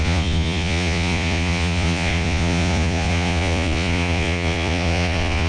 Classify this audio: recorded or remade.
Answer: remade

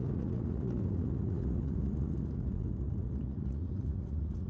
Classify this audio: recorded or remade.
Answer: remade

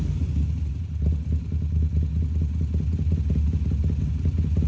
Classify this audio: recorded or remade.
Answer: recorded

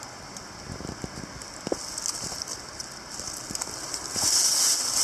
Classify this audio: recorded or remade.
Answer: recorded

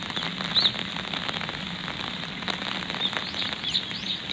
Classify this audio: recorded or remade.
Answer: recorded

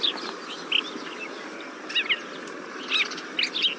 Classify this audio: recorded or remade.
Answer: recorded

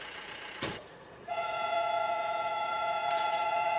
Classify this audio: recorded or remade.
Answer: remade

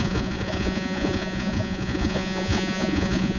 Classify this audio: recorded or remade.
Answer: remade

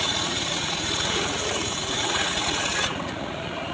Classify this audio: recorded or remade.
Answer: remade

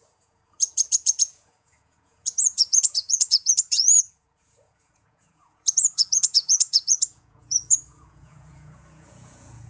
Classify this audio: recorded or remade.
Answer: remade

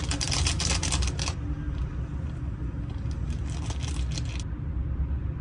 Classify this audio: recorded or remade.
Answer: recorded